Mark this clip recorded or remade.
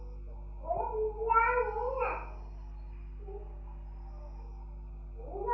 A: recorded